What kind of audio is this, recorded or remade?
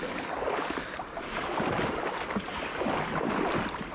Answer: recorded